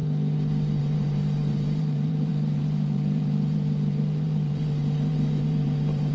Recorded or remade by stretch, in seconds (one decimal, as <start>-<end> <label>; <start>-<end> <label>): 0.0-0.8 recorded; 0.8-6.1 remade